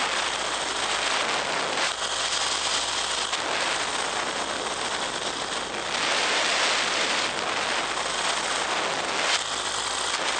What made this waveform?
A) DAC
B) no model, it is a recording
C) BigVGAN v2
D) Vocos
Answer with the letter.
B